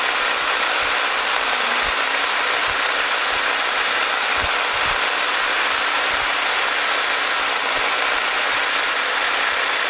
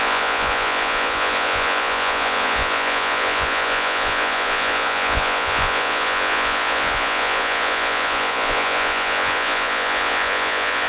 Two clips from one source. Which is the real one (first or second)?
first